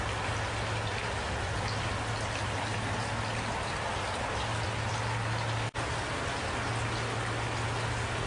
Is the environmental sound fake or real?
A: real